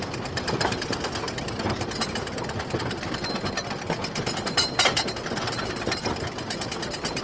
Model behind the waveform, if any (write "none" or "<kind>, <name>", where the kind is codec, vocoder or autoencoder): vocoder, BigVGAN v2